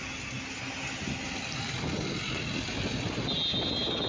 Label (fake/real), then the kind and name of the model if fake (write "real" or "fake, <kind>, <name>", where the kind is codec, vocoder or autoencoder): real